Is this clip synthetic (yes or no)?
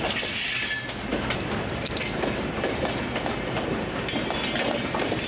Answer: no